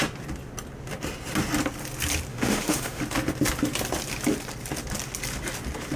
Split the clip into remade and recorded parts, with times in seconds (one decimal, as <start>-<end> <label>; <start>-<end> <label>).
0.0-2.3 recorded; 2.3-3.0 remade; 3.0-6.0 recorded